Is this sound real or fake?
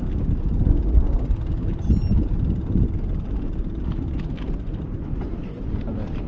real